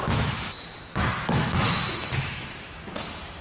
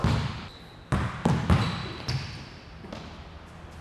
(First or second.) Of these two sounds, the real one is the second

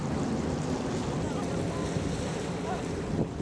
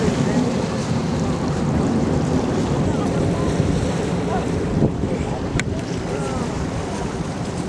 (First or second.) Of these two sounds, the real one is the first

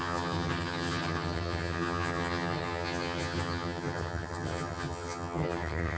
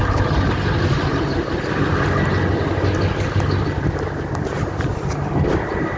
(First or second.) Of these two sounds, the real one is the second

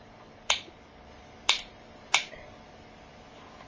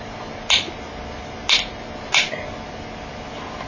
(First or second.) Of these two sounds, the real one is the second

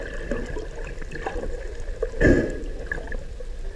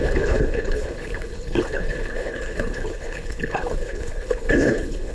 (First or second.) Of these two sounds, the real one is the first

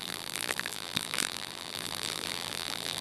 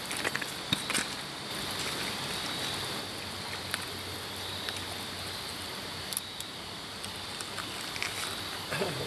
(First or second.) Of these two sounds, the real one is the second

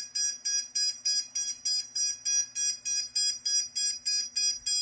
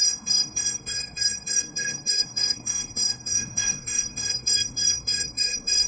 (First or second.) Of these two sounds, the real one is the first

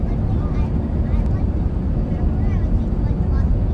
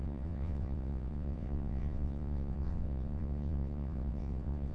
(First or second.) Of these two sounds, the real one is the first